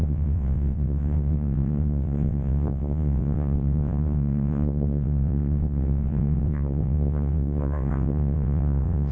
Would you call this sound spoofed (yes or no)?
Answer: yes